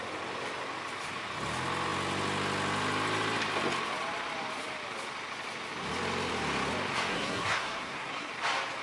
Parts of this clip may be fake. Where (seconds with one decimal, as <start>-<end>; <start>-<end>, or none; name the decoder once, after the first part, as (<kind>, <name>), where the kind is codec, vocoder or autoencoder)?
7.1-8.3 (codec, SNAC)